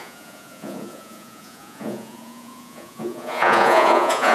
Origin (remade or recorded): remade